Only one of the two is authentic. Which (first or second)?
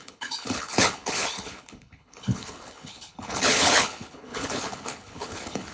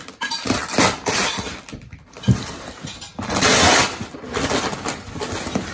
second